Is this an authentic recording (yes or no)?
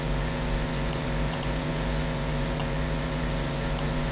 no